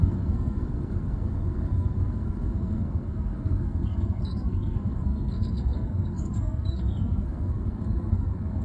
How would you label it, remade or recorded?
remade